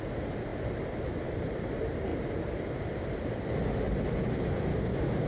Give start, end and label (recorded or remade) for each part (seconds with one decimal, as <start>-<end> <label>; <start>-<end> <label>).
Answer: 0.0-4.7 recorded; 4.7-5.3 remade